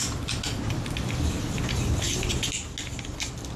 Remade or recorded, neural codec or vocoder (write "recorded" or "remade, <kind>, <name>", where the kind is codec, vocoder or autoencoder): recorded